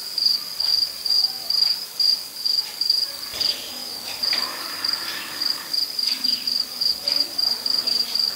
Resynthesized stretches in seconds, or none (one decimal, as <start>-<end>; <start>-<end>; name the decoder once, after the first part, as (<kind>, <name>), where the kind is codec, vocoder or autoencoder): 0.0-8.4 (codec, DAC)